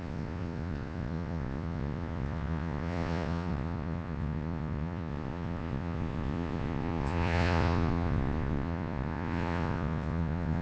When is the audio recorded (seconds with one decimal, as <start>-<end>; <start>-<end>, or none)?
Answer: none